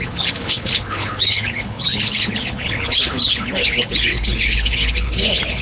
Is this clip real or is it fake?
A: fake